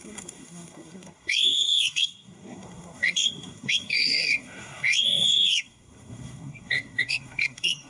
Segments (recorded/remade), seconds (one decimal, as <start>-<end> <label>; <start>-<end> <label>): 0.0-7.9 remade